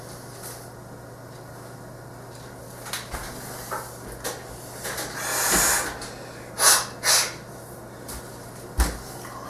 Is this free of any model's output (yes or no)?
yes